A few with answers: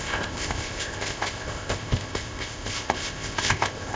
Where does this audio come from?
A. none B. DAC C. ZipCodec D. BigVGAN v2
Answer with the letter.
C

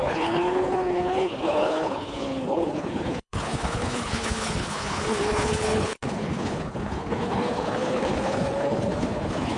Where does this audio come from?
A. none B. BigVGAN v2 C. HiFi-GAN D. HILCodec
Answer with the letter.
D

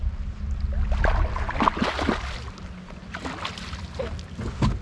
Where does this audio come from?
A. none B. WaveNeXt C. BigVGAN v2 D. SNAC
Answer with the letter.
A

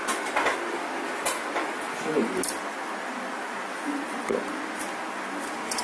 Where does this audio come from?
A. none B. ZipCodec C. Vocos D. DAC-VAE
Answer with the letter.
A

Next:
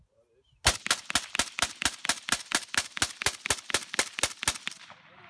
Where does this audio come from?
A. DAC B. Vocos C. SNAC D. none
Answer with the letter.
D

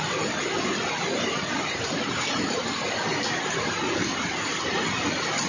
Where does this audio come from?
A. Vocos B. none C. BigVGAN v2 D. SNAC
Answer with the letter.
B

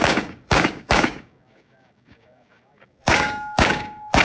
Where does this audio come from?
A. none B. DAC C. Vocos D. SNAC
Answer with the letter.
B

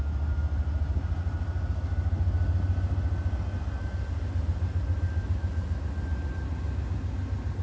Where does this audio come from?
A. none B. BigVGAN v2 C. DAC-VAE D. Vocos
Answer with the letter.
A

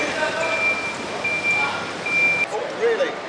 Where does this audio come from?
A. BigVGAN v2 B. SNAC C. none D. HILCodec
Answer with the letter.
C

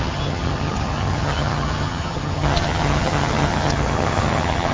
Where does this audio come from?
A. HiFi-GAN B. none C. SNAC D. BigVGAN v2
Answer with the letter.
A